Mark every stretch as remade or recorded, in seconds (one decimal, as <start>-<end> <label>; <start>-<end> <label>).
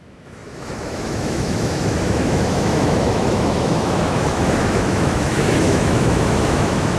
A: 0.0-7.0 remade